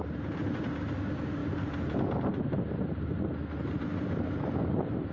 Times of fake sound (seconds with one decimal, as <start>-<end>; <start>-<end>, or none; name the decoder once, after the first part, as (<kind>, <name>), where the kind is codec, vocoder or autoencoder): none